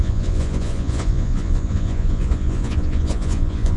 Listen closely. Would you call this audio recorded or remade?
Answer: remade